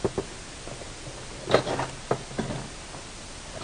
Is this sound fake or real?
real